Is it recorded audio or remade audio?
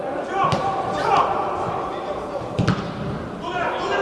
recorded